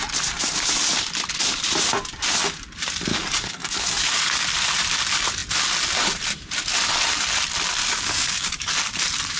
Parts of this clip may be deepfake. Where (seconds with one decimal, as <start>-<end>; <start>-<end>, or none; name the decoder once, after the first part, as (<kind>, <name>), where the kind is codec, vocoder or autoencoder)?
3.1-4.4 (codec, DAC); 7.8-8.7